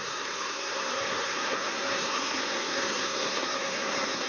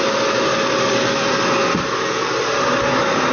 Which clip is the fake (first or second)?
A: first